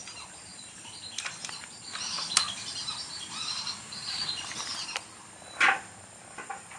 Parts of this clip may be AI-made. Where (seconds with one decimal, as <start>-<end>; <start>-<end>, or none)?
none